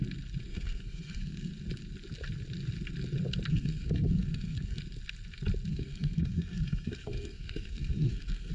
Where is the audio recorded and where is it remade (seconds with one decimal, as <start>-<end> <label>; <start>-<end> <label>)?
0.0-0.5 recorded; 0.5-1.5 remade; 1.5-3.5 recorded; 3.5-4.8 remade; 4.8-5.7 recorded; 5.7-8.5 remade